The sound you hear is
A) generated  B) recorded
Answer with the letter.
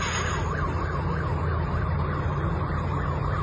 B